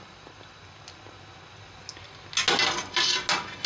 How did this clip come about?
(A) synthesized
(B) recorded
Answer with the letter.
B